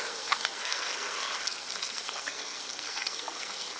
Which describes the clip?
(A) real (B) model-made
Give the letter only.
B